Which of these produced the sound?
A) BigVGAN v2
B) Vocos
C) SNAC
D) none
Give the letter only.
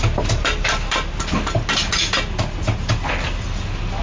D